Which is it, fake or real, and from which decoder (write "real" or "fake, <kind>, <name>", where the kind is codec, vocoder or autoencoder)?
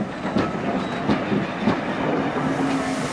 real